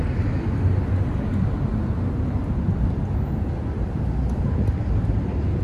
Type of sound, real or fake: real